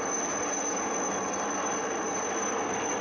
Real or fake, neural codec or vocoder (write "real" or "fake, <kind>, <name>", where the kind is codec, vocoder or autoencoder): real